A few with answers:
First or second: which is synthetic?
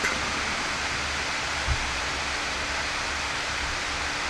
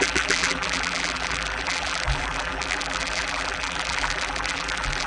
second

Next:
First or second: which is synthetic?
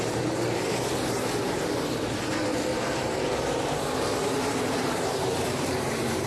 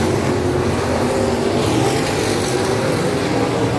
first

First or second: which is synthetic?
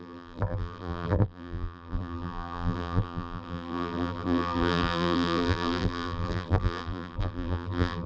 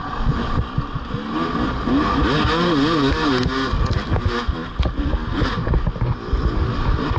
first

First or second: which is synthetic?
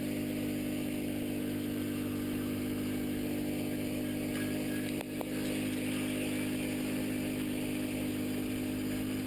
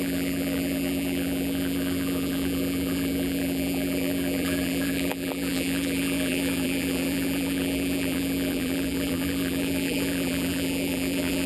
second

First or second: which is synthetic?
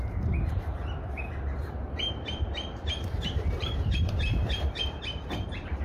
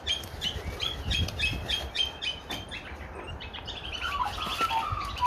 first